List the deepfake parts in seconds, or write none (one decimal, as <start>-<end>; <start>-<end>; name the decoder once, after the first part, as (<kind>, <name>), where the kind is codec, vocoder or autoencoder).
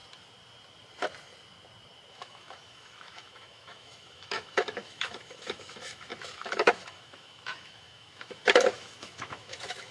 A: 2.1-9.9 (autoencoder, DAC-VAE)